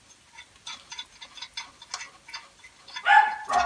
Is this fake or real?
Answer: real